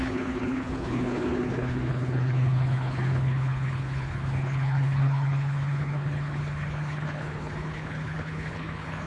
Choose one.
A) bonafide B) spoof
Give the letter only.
B